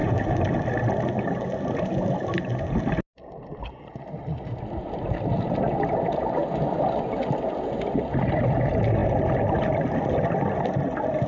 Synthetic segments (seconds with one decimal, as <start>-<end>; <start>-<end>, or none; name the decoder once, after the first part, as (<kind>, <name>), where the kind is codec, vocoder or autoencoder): none